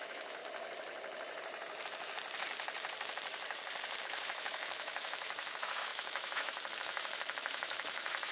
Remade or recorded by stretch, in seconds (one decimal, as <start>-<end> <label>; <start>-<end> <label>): 0.0-0.4 remade; 0.4-4.0 recorded; 4.0-8.3 remade